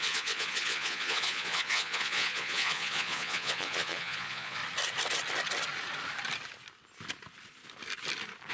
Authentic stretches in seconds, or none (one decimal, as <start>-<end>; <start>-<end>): 4.6-8.5